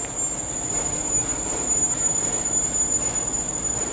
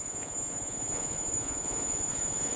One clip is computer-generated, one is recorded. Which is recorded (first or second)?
first